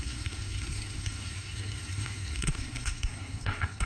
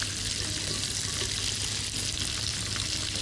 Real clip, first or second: second